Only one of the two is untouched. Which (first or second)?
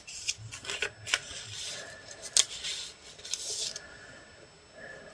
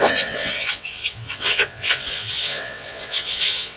first